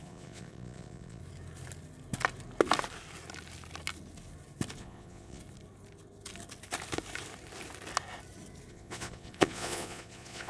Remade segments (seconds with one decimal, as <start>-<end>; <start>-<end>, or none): 0.0-1.2; 4.8-5.4; 8.7-10.5